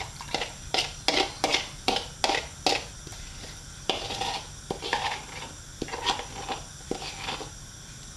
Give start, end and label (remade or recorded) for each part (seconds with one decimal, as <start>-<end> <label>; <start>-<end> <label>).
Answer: 0.0-1.5 recorded; 1.5-2.2 remade; 2.2-3.1 recorded; 3.1-4.2 remade; 4.2-8.2 recorded